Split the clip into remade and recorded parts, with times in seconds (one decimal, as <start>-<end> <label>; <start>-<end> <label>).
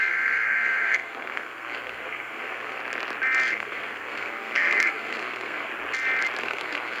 0.0-2.8 remade; 2.8-3.5 recorded; 3.5-5.7 remade; 5.7-6.4 recorded; 6.4-7.0 remade